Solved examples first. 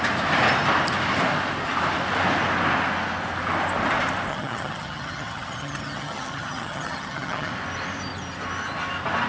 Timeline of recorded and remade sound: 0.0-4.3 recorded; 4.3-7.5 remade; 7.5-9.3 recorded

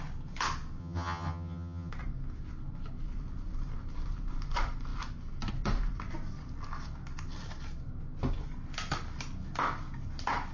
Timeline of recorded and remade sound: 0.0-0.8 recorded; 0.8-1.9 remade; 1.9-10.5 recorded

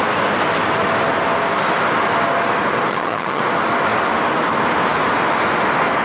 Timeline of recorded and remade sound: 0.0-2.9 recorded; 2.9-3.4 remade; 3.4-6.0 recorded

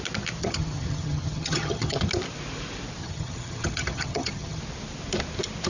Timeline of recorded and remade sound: 0.0-0.4 recorded; 0.4-2.1 remade; 2.1-3.0 recorded; 3.0-4.6 remade; 4.6-5.7 recorded

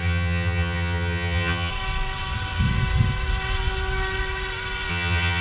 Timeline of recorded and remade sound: 0.0-1.7 remade; 1.7-4.9 recorded; 4.9-5.4 remade